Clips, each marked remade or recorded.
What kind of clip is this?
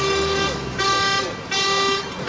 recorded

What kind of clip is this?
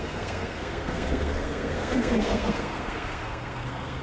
remade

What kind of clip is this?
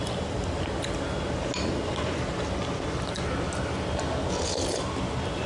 recorded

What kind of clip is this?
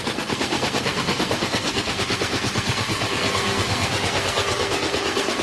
remade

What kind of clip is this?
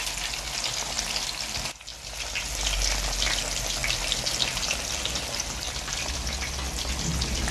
recorded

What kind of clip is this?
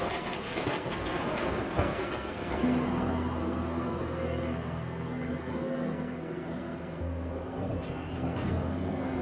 remade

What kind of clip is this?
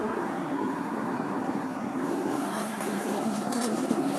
remade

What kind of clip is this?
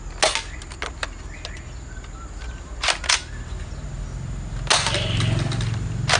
recorded